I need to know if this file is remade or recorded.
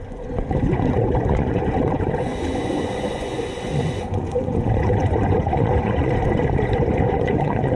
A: remade